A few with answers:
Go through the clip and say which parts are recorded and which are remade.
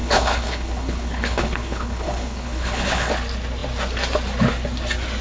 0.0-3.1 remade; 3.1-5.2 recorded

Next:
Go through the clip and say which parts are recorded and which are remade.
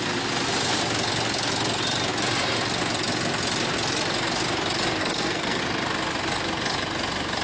0.0-5.0 recorded; 5.0-5.6 remade; 5.6-7.4 recorded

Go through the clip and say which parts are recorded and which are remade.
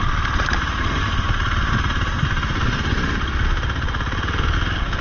0.0-2.7 remade; 2.7-5.0 recorded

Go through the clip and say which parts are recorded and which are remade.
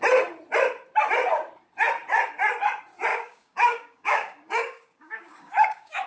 0.0-3.1 recorded; 3.1-6.1 remade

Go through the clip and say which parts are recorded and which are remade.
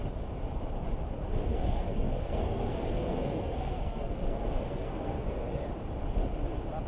0.0-1.5 recorded; 1.5-5.6 remade; 5.6-6.9 recorded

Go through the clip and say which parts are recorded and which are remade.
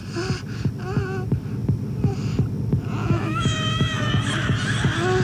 0.0-3.0 recorded; 3.0-4.1 remade; 4.1-5.2 recorded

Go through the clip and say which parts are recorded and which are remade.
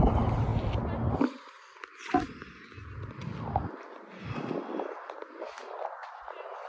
0.0-6.7 recorded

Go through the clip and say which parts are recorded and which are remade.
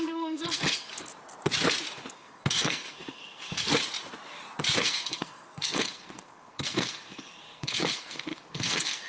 0.0-0.9 remade; 0.9-2.1 recorded; 2.1-3.7 remade; 3.7-4.8 recorded; 4.8-9.1 remade